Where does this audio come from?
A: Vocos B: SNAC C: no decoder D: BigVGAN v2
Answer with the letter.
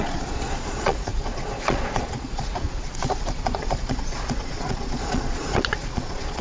A